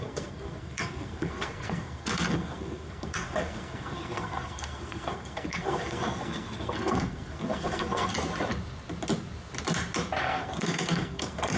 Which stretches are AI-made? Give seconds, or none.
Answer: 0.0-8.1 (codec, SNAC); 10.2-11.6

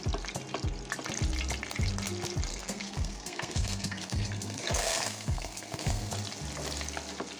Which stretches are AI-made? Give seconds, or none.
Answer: 2.5-6.1 (codec, SNAC)

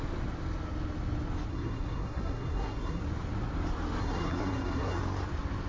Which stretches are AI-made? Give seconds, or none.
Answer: 1.5-3.0 (codec, SNAC); 4.0-5.0

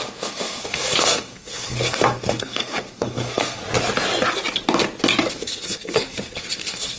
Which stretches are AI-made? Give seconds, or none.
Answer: 0.0-3.6 (codec, SNAC); 5.3-7.0

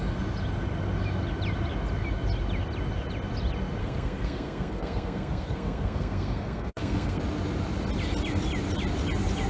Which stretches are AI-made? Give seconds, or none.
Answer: 3.8-7.2 (codec, SNAC)

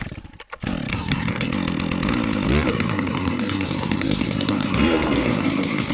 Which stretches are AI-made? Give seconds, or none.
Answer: 0.9-1.5 (codec, SNAC); 2.7-5.9

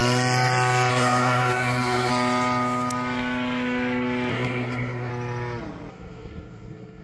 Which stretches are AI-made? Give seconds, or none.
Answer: 0.9-2.1 (codec, SNAC); 4.3-5.1; 5.9-7.0

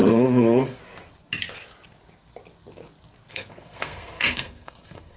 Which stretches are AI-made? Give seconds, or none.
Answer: 0.0-0.8 (codec, SNAC); 3.3-5.2